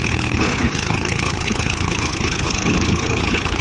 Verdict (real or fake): fake